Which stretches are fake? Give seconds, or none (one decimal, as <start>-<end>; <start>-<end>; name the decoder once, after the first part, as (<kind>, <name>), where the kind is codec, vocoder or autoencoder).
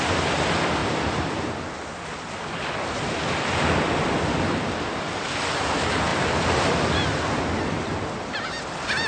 none